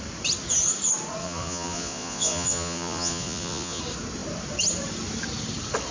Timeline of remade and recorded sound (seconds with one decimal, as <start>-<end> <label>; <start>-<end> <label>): 0.0-1.2 recorded; 1.2-3.8 remade; 3.8-5.9 recorded